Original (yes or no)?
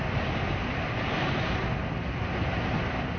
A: yes